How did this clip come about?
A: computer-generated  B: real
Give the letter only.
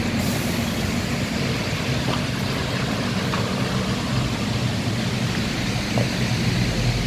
B